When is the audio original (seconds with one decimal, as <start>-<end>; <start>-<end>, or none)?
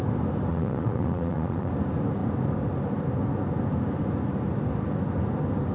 0.0-0.5; 1.7-5.7